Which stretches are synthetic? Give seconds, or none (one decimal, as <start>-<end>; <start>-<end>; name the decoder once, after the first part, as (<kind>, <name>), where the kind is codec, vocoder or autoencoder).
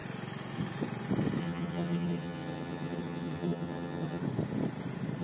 1.4-4.2 (vocoder, HiFi-GAN)